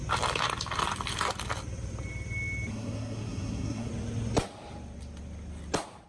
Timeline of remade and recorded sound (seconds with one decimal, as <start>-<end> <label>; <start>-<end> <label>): 0.0-2.7 recorded; 2.7-3.9 remade; 3.9-6.1 recorded